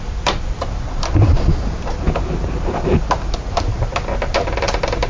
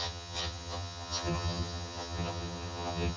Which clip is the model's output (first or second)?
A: second